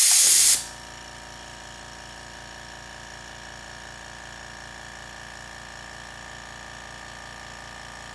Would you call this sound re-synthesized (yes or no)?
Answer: no